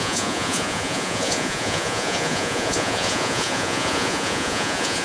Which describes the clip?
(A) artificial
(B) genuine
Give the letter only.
A